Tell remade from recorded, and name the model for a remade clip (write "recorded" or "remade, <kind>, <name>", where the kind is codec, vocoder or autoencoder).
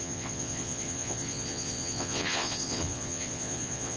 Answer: remade, vocoder, Vocos